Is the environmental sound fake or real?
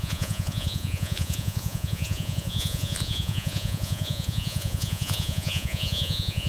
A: fake